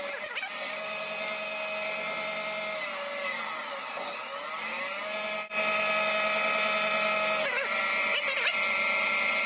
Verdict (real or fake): real